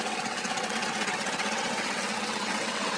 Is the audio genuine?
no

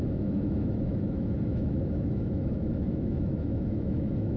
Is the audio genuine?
no